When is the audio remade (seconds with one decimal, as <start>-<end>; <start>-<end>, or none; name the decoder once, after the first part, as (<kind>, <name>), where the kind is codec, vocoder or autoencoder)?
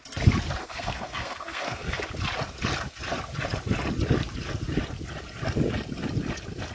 0.6-2.0 (codec, SNAC)